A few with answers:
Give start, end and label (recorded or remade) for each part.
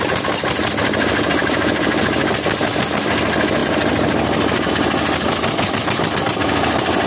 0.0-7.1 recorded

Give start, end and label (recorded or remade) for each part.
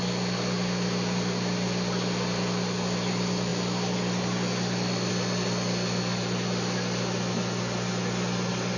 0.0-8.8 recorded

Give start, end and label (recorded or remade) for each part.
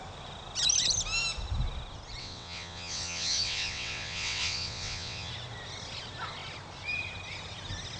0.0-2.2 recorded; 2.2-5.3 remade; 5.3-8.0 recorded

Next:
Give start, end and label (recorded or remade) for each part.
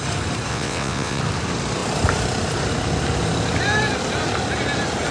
0.0-0.5 recorded; 0.5-1.2 remade; 1.2-5.1 recorded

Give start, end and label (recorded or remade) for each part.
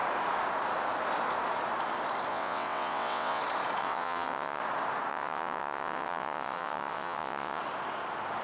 0.0-2.3 recorded; 2.3-3.4 remade; 3.4-3.8 recorded; 3.8-4.6 remade; 4.6-5.1 recorded; 5.1-7.6 remade; 7.6-8.4 recorded